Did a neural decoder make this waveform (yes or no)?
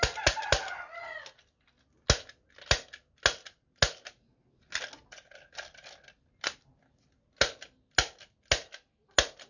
no